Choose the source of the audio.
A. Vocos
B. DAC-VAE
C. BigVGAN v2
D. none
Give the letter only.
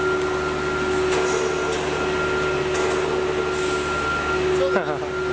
D